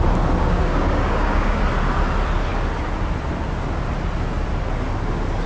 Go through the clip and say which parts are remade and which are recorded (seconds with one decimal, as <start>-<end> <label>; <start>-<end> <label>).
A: 0.0-0.4 recorded; 0.4-1.6 remade; 1.6-5.5 recorded